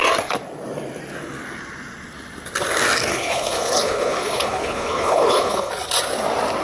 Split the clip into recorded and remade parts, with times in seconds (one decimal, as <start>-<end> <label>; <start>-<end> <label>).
0.0-3.1 recorded; 3.1-5.7 remade; 5.7-6.6 recorded